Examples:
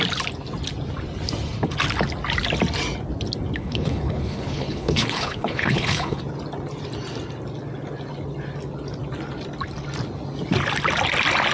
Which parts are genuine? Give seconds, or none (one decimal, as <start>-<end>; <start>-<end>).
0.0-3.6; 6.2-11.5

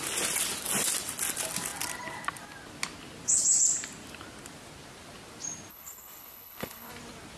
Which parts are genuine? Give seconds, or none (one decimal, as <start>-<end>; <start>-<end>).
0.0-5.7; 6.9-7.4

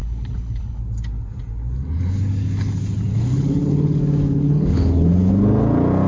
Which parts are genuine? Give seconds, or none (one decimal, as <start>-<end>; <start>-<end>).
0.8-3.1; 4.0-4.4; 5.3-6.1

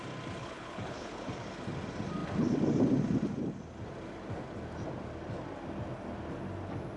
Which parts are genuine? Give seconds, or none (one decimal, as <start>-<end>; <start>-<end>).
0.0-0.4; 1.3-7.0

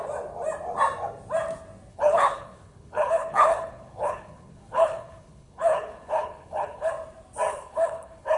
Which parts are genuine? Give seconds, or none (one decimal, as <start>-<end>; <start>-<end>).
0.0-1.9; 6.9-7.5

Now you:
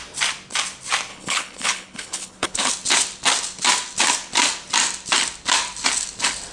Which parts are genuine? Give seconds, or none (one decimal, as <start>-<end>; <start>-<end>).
0.0-1.1; 2.7-6.5

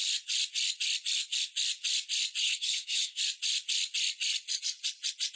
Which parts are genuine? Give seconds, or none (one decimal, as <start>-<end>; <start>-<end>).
0.0-2.4; 3.2-5.4

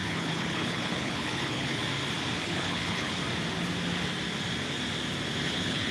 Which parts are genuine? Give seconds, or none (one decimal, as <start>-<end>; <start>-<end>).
1.8-2.4; 3.2-5.5